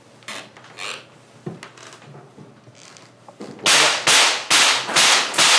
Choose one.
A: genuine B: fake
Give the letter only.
A